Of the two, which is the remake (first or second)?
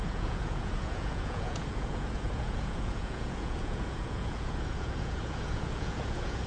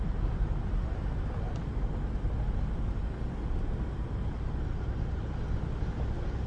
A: first